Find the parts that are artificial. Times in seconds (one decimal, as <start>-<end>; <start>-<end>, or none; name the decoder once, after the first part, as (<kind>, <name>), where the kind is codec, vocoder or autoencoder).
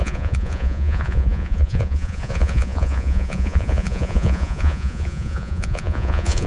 0.0-6.5 (vocoder, Vocos)